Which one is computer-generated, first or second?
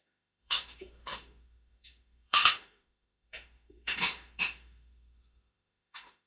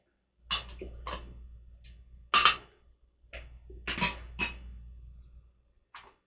first